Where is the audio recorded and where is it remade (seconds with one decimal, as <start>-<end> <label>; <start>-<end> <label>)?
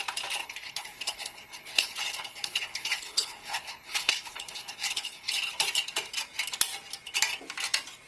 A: 0.0-0.4 recorded; 0.4-5.3 remade; 5.3-8.1 recorded